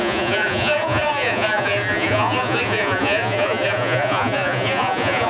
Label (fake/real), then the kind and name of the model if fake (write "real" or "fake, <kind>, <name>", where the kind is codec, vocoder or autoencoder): fake, vocoder, Vocos